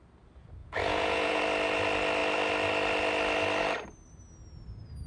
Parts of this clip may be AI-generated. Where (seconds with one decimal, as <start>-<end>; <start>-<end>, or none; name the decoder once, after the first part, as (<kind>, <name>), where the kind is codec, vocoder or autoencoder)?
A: 0.6-1.4 (vocoder, Vocos)